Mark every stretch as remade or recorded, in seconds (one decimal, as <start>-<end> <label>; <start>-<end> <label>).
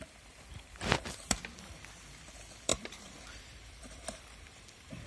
0.0-5.1 remade